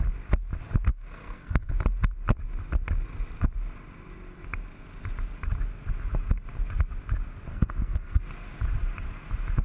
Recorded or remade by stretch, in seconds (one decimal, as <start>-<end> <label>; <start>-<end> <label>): 0.0-0.9 recorded; 0.9-1.7 remade; 1.7-7.5 recorded; 7.5-8.2 remade; 8.2-9.6 recorded